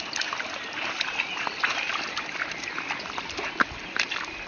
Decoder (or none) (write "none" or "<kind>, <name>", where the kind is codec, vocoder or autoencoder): none